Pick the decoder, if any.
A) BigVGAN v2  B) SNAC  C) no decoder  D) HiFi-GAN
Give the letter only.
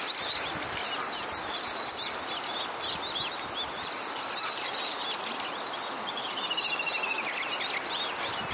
C